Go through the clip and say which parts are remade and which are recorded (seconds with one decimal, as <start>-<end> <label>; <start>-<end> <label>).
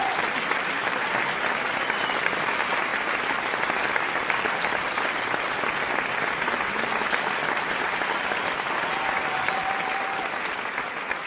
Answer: 0.0-11.3 recorded